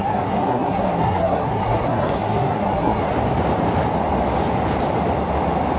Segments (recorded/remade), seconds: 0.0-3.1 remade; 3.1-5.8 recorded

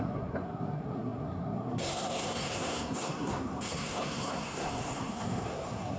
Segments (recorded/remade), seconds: 0.0-6.0 remade

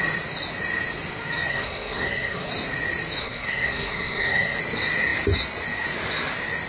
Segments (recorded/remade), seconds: 0.0-1.5 recorded; 1.5-2.5 remade; 2.5-3.2 recorded; 3.2-4.6 remade; 4.6-6.7 recorded